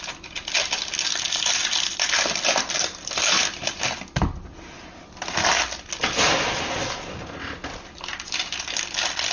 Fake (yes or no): no